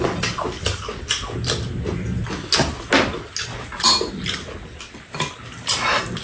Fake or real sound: real